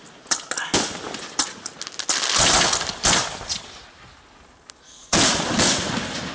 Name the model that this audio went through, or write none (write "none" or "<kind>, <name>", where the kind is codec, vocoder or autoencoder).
none